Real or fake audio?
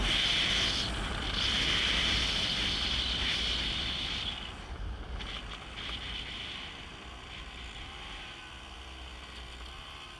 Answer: real